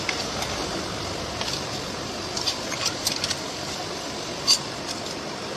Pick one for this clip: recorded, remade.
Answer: remade